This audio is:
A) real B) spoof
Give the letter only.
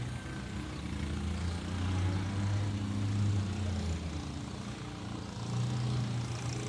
A